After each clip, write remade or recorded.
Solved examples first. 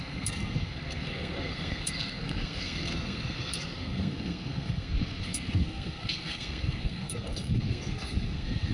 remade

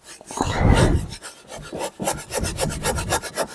recorded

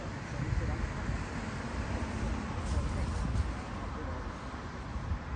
recorded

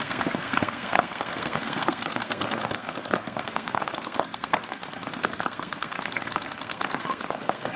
remade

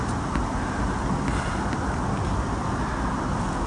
recorded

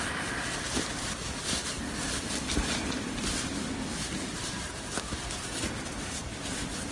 recorded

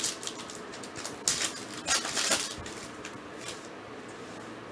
recorded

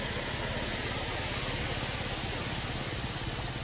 recorded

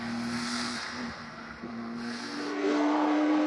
remade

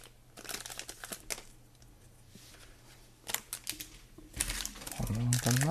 recorded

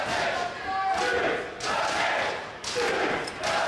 recorded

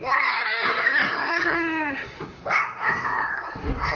remade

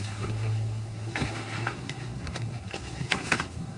remade